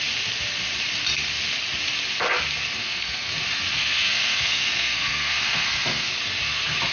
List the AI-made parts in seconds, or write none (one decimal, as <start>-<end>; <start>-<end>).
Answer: 2.8-3.3; 3.7-6.1